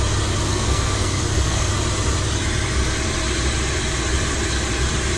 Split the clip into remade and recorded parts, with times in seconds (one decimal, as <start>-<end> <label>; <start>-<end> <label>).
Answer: 0.0-0.5 recorded; 0.5-1.7 remade; 1.7-5.2 recorded